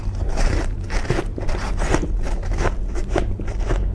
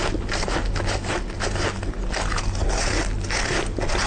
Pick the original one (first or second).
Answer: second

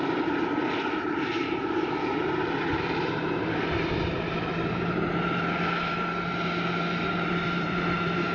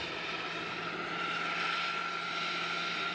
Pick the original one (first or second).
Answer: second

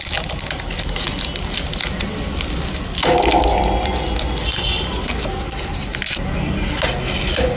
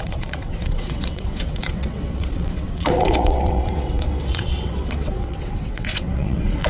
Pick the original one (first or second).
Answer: first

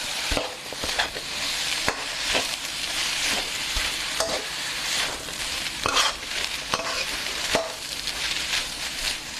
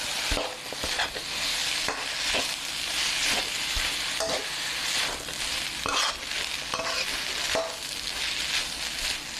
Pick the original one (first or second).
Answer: second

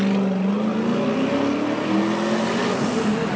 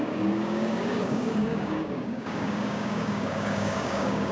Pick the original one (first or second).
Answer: first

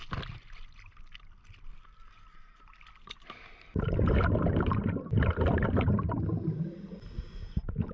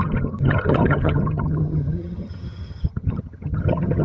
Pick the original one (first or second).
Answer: first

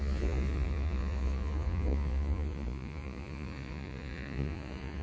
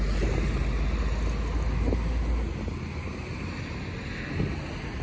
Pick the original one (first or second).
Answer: second